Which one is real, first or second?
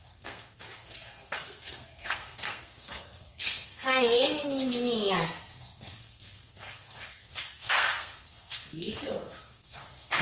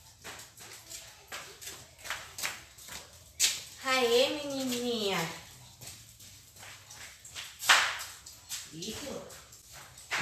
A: second